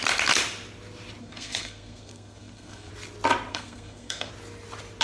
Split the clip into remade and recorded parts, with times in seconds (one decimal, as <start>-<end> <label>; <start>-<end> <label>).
0.0-1.2 recorded; 1.2-2.9 remade; 2.9-3.5 recorded; 3.5-4.3 remade; 4.3-5.0 recorded

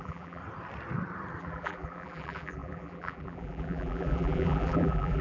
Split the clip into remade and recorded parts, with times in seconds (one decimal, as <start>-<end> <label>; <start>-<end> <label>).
0.0-0.4 remade; 0.4-1.4 recorded; 1.4-5.2 remade

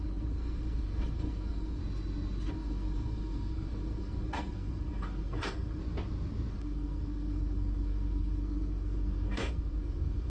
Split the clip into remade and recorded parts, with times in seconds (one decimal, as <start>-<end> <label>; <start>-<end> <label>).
0.0-1.8 remade; 1.8-2.5 recorded; 2.5-5.8 remade; 5.8-6.5 recorded; 6.5-10.3 remade

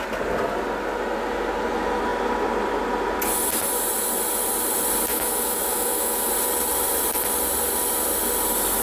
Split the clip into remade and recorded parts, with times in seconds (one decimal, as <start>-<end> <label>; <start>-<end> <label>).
0.0-5.1 recorded; 5.1-6.3 remade; 6.3-8.8 recorded

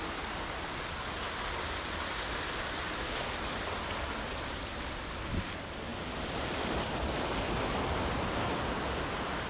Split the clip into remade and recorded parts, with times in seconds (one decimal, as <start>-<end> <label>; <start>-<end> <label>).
0.0-5.9 recorded; 5.9-6.8 remade; 6.8-9.5 recorded

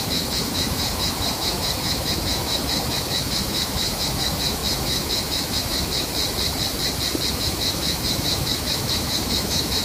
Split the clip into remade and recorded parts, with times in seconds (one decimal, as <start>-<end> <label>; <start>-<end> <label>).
0.0-6.1 remade; 6.1-7.3 recorded; 7.3-9.8 remade

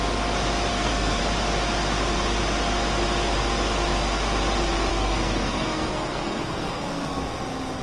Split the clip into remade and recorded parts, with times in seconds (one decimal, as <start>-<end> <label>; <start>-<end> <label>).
0.0-0.7 recorded; 0.7-1.2 remade; 1.2-4.9 recorded; 4.9-7.2 remade; 7.2-7.8 recorded